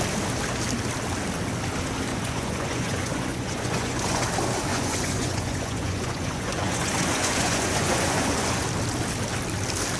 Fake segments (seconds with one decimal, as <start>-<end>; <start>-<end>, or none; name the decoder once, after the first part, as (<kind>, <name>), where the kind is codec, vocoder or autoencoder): 2.1-4.2 (vocoder, Vocos); 4.7-8.6